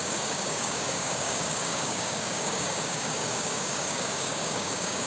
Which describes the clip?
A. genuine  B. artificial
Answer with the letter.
B